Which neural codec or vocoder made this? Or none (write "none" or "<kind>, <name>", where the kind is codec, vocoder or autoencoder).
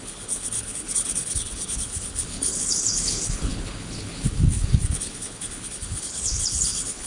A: codec, HILCodec